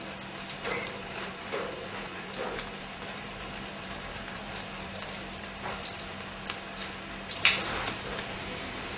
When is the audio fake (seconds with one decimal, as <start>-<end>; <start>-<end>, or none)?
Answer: 0.8-6.0